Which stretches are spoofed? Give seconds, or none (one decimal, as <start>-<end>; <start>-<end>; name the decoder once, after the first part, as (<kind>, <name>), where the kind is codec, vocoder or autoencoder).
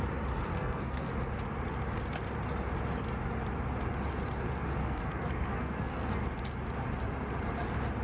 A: 0.5-1.1 (codec, SNAC); 4.8-6.2